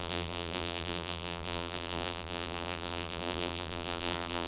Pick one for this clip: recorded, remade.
remade